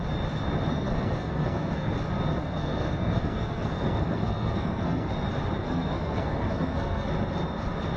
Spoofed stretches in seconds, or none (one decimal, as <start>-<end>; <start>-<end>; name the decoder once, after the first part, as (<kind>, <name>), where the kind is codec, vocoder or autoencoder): 0.7-1.9 (codec, SNAC); 2.4-5.1; 5.6-7.1